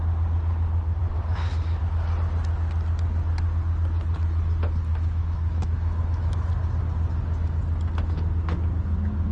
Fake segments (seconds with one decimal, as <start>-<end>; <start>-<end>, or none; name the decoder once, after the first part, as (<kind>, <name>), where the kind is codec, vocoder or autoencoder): 1.0-1.8 (autoencoder, DAC-VAE); 4.9-6.5